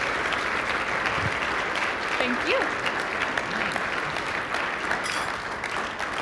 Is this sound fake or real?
real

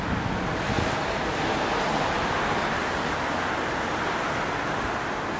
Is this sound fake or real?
real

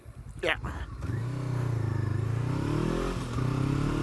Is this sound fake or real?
real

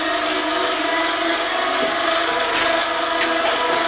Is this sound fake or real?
real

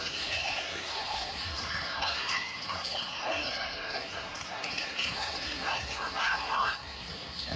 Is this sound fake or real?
fake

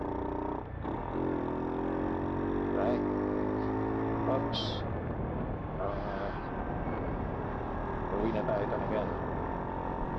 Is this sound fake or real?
real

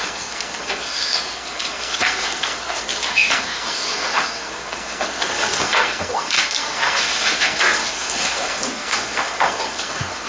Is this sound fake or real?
fake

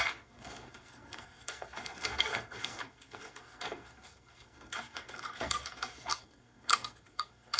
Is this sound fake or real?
fake